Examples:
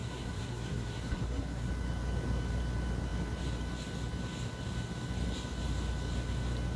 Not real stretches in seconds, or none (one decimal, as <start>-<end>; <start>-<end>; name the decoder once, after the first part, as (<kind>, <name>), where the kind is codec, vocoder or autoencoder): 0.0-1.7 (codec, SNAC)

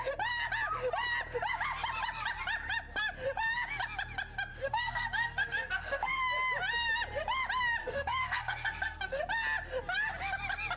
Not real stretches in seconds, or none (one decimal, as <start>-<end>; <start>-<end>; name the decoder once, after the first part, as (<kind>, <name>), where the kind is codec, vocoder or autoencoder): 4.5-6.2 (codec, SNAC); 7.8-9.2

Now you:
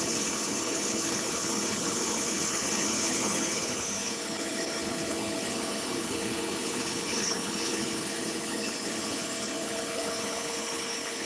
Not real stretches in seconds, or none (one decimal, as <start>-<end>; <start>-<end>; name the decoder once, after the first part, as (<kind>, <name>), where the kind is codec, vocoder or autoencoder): 0.0-11.3 (codec, HILCodec)

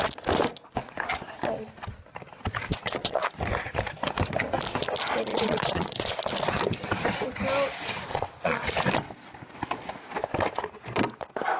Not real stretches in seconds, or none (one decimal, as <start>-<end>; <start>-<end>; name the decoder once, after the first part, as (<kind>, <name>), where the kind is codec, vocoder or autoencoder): 2.7-3.3 (vocoder, Vocos); 5.3-6.2; 8.1-8.7

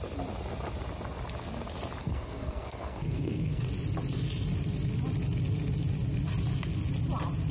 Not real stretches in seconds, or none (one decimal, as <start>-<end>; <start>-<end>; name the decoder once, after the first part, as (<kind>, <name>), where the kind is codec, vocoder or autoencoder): 2.0-3.6 (codec, SNAC)